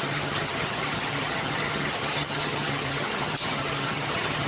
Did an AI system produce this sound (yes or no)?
yes